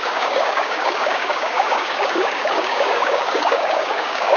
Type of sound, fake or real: fake